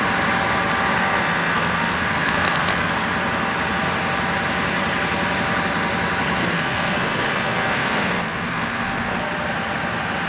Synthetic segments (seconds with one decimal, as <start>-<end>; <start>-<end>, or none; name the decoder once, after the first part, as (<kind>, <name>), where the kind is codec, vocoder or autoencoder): 1.0-2.9 (codec, SNAC); 6.4-9.2

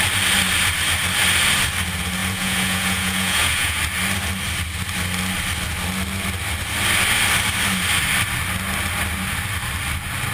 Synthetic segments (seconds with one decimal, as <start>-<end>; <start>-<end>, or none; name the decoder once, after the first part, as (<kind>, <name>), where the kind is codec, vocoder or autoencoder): 2.2-3.8 (vocoder, Vocos)